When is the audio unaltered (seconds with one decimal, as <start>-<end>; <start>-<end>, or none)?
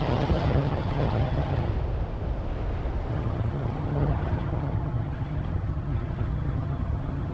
1.7-3.1